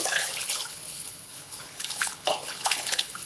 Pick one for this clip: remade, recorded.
remade